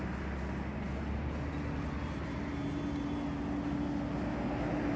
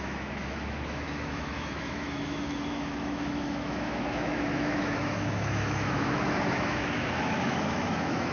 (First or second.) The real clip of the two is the first